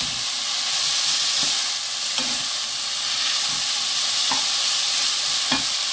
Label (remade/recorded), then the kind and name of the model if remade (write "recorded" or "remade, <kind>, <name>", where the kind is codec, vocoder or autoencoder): recorded